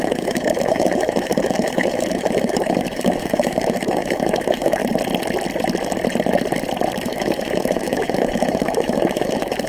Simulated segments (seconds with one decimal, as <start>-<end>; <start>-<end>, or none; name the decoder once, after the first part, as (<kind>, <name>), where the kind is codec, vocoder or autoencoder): 0.0-4.8 (autoencoder, DAC-VAE); 6.9-9.7